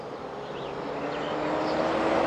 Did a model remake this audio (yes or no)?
no